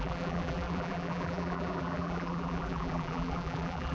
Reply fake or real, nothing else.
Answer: fake